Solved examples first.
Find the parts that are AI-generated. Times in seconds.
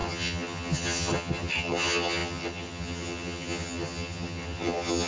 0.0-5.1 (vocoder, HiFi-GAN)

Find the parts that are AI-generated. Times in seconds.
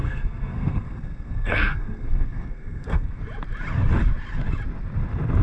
0.0-3.2 (codec, SNAC)